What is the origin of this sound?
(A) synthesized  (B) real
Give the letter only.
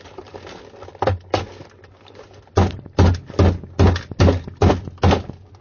B